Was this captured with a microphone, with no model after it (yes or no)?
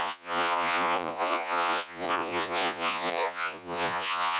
no